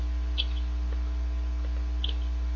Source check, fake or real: real